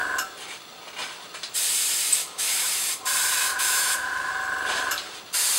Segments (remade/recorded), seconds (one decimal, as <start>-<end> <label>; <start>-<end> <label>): 0.0-2.2 recorded; 2.2-2.9 remade; 2.9-3.5 recorded; 3.5-4.3 remade; 4.3-5.6 recorded